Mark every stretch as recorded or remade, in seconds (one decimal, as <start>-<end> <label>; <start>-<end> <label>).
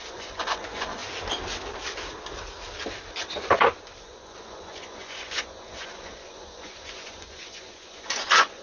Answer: 0.0-1.0 remade; 1.0-4.0 recorded; 4.0-8.6 remade